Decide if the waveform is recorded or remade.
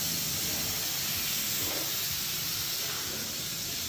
recorded